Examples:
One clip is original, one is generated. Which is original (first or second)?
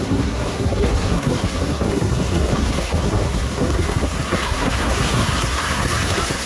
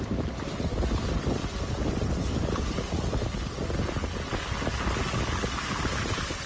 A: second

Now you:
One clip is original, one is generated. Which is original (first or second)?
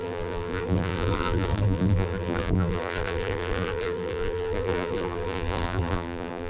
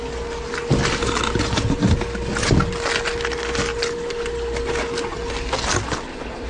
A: second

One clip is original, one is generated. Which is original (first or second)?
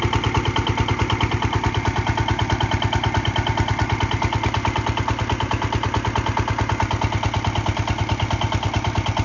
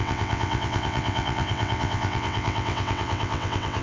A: first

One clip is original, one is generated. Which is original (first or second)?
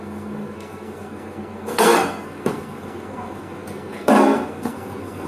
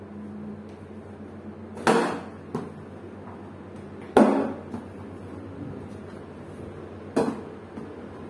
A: second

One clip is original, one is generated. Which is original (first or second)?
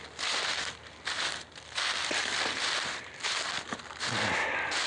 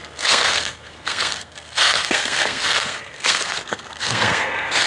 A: first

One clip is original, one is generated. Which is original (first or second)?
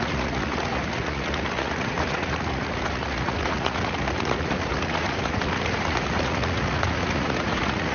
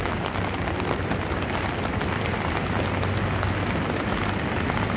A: second